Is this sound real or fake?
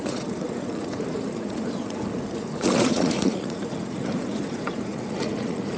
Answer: fake